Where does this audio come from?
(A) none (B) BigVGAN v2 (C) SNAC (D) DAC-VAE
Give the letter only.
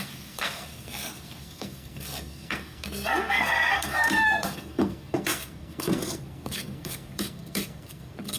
C